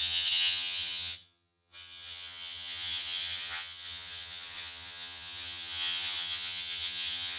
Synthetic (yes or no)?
yes